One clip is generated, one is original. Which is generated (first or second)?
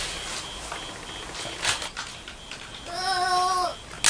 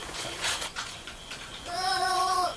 second